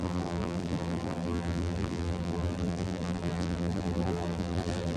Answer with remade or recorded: remade